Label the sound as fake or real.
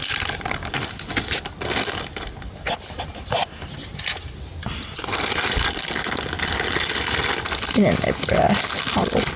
real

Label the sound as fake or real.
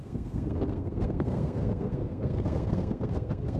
fake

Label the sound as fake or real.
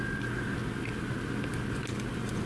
real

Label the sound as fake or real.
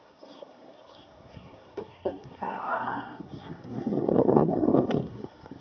fake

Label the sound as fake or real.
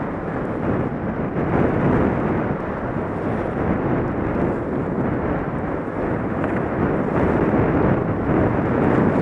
real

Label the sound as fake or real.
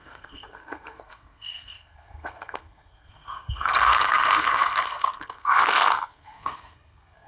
fake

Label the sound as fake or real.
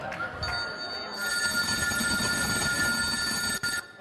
real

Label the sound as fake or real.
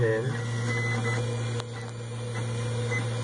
real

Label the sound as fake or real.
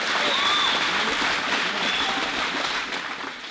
real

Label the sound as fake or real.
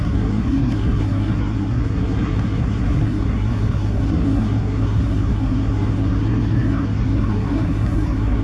fake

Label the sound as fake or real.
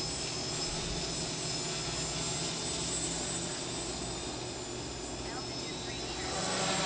real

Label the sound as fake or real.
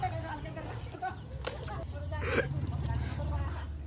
real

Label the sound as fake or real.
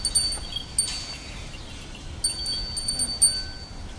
real